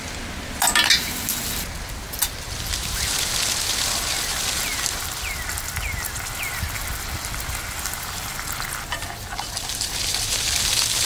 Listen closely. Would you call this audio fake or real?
real